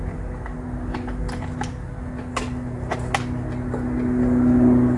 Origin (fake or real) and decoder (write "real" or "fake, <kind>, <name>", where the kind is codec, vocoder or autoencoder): real